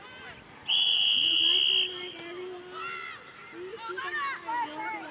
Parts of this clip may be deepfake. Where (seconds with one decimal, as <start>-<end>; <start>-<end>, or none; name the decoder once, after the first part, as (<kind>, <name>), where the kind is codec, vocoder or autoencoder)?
0.6-1.4 (vocoder, Vocos)